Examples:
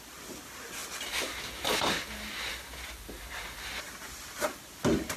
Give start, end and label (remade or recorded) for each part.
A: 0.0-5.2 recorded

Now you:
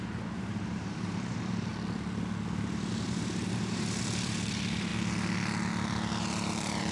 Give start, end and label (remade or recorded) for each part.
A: 0.0-1.7 remade; 1.7-2.5 recorded; 2.5-4.9 remade; 4.9-6.2 recorded; 6.2-6.9 remade